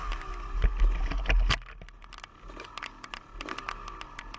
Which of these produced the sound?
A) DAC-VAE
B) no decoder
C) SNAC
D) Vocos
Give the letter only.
B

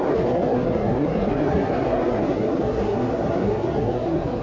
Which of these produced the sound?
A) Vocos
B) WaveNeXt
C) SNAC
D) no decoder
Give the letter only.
C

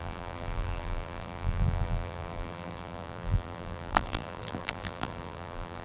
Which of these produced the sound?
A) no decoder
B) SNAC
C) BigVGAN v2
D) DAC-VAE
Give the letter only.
C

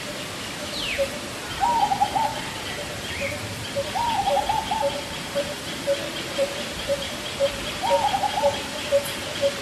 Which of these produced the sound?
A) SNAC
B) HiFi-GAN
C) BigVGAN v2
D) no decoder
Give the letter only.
C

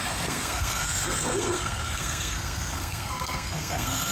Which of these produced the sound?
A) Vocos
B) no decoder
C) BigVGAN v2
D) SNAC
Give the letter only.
D